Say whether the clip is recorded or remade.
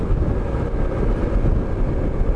recorded